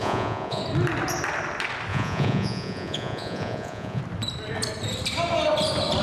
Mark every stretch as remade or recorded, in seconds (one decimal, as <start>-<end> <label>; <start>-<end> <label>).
0.0-0.6 remade; 0.6-1.9 recorded; 1.9-4.0 remade; 4.0-6.0 recorded